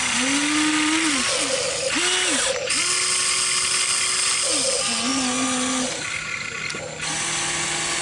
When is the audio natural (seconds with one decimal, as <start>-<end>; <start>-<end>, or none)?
0.0-8.0